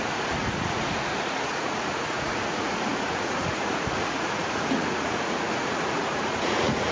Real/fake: fake